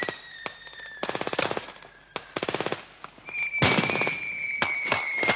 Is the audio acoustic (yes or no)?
yes